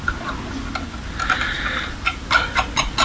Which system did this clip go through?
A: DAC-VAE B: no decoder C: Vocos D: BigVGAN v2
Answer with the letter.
B